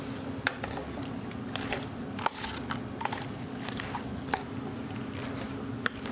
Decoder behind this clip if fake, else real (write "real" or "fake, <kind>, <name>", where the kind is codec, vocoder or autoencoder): real